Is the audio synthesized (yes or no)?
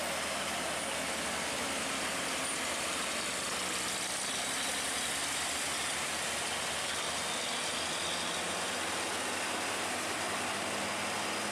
no